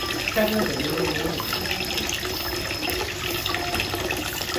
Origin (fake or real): real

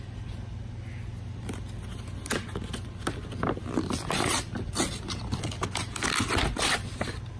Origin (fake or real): real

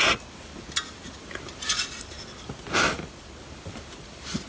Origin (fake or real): real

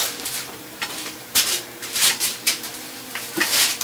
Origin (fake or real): fake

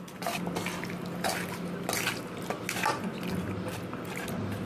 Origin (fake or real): real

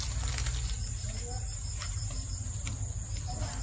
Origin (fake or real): real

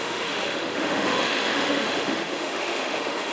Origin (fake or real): fake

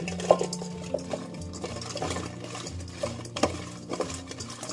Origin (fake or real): real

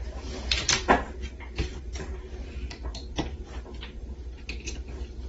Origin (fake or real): fake